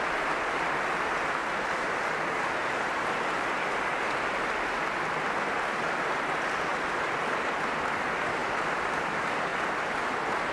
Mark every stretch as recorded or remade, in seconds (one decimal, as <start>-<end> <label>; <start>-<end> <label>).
0.0-10.5 recorded